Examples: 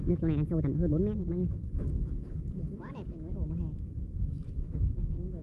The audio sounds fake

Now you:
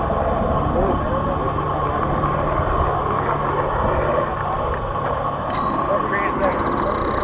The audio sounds real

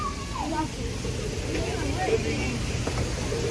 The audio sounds real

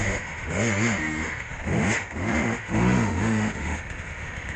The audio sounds fake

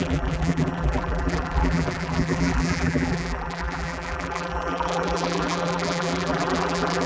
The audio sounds fake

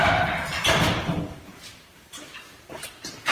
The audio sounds fake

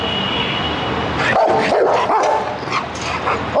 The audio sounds real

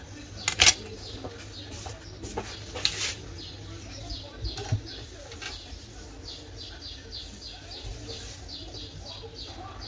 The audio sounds real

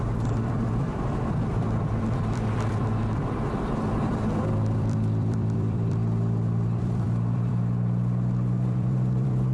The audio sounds fake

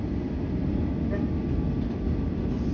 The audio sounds real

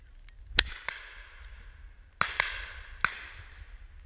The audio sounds real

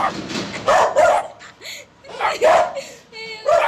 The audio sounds fake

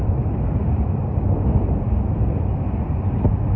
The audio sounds real